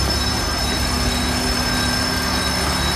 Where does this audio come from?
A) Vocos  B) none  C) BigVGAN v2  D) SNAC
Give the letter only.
B